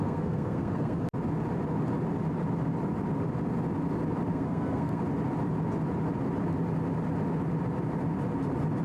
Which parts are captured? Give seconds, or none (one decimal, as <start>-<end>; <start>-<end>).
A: 1.0-4.3; 5.0-8.8